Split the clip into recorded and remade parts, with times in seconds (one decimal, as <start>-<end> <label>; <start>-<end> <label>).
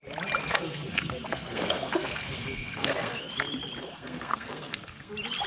0.0-0.4 recorded; 0.4-3.3 remade; 3.3-3.8 recorded; 3.8-5.1 remade; 5.1-5.5 recorded